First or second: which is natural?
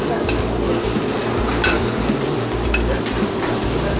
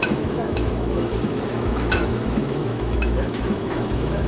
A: first